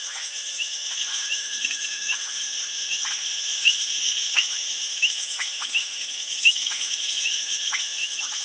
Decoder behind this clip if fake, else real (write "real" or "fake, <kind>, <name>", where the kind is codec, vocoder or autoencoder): fake, autoencoder, DAC-VAE